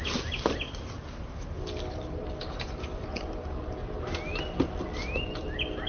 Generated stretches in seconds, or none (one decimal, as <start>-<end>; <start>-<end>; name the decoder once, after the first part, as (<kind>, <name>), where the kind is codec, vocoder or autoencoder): none